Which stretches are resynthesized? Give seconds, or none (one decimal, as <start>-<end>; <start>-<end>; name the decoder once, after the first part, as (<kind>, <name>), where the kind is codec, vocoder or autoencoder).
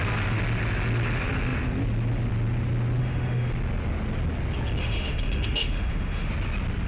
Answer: 3.0-3.5 (autoencoder, DAC-VAE); 4.8-6.3